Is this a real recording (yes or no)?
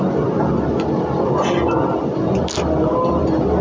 yes